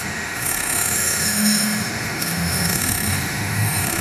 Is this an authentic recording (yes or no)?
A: no